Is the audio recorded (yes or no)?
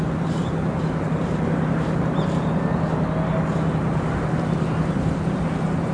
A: yes